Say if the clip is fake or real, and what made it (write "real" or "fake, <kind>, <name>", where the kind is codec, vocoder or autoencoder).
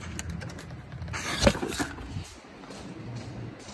real